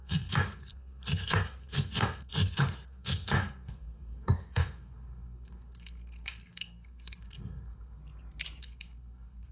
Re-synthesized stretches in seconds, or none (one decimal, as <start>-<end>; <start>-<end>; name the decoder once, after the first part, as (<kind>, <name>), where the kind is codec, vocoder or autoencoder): 0.0-8.0 (codec, SNAC); 8.6-9.5